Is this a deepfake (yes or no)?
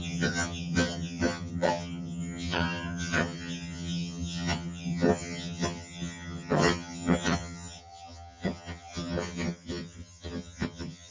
yes